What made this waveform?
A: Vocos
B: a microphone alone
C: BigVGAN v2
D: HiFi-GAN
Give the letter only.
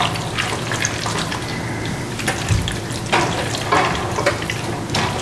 B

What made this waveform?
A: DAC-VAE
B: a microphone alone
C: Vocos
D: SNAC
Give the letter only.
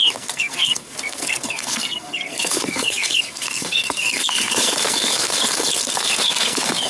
D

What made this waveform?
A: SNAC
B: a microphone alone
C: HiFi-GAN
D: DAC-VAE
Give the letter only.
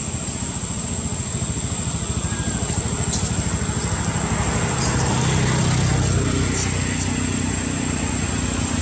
B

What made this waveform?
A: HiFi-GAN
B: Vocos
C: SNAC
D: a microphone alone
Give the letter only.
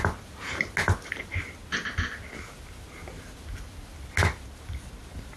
D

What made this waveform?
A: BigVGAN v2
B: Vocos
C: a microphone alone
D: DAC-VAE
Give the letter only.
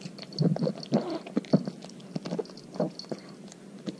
C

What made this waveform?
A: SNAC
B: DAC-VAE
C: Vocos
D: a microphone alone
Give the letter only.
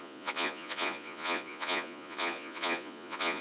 C